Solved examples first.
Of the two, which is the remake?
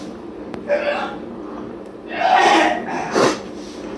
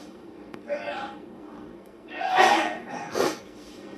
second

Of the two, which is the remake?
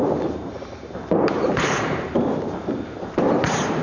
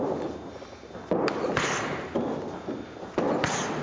first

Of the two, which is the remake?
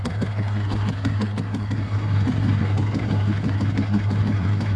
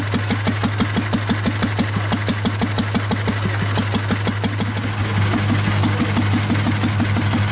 first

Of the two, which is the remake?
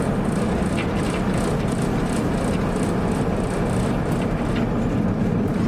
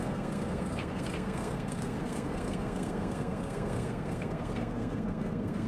second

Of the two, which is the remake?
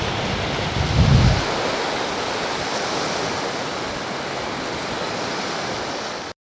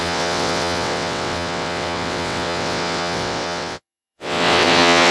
second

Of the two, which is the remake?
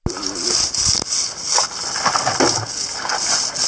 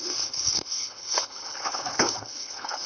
second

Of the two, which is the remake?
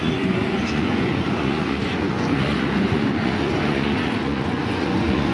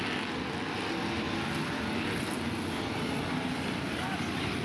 first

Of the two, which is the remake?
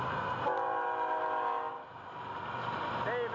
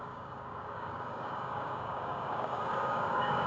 second